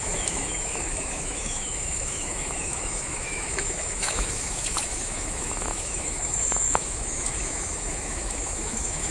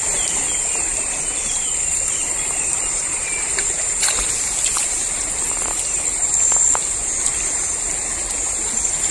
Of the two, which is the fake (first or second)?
first